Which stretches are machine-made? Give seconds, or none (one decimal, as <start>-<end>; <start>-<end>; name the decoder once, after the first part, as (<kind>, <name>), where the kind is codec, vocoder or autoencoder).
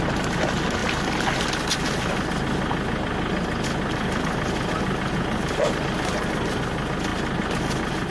none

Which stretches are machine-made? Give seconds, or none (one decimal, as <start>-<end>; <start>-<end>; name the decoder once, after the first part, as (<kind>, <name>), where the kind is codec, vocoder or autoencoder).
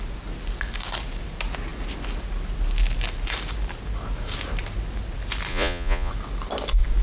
5.5-6.1 (vocoder, Vocos)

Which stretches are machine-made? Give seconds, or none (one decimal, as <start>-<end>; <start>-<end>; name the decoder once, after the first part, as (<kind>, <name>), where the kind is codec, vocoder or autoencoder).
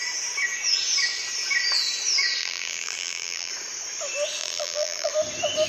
2.4-3.5 (vocoder, BigVGAN v2); 4.4-5.1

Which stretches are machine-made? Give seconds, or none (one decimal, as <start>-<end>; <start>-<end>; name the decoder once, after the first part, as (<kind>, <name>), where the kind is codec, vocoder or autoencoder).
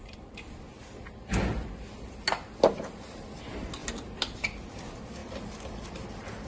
none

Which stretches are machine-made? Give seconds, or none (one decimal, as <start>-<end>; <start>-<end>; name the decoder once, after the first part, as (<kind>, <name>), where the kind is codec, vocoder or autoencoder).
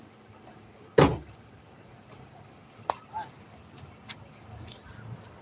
none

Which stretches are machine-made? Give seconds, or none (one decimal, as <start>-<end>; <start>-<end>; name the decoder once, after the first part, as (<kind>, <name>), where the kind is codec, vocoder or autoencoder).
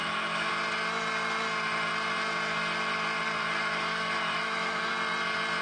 0.0-0.5 (autoencoder, DAC-VAE); 3.4-4.9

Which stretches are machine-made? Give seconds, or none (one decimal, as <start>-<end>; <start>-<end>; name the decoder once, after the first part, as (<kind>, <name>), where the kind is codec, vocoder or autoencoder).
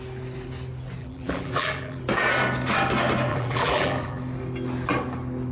1.0-2.0 (vocoder, BigVGAN v2); 3.3-4.2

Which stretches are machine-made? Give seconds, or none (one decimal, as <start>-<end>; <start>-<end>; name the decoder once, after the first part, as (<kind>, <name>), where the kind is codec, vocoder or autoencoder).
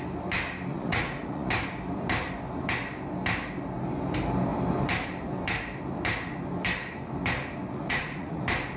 0.7-1.5 (vocoder, Vocos); 7.7-8.4